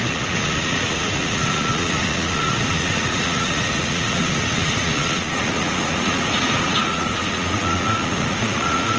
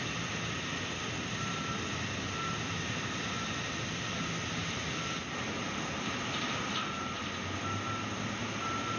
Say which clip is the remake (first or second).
first